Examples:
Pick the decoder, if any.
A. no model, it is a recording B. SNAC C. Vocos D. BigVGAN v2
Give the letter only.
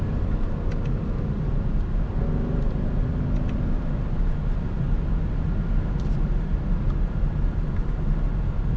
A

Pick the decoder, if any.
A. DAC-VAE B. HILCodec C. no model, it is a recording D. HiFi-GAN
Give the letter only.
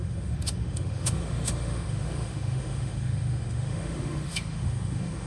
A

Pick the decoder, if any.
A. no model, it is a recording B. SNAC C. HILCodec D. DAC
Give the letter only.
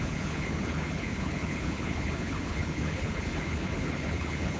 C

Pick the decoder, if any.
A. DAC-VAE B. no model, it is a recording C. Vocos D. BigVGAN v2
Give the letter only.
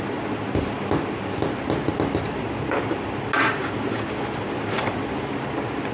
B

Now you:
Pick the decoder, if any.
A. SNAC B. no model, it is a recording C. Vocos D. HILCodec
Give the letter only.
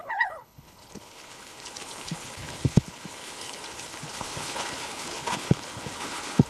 D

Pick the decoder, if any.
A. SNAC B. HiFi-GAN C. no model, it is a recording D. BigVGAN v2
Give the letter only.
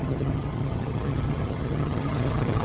B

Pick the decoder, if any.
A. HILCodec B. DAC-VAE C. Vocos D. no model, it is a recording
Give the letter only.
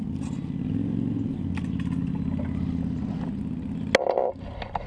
D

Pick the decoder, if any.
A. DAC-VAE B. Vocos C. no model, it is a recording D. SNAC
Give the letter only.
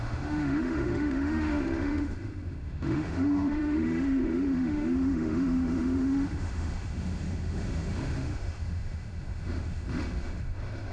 A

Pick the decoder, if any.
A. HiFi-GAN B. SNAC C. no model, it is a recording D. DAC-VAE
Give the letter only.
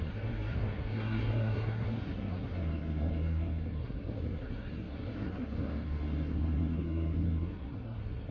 B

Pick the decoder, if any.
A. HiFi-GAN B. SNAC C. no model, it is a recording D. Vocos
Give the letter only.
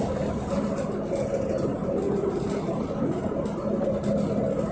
C